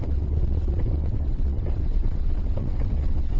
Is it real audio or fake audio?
fake